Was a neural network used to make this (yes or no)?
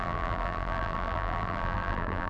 yes